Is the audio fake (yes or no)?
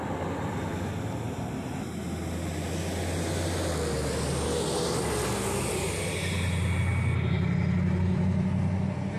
no